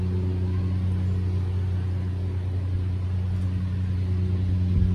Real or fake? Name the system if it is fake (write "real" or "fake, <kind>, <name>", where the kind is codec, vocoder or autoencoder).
real